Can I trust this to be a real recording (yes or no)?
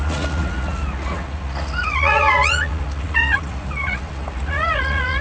no